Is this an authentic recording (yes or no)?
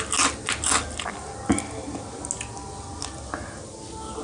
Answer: yes